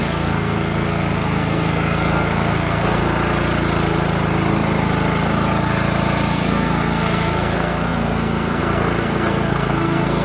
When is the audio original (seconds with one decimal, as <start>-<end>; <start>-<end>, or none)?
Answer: 3.0-6.3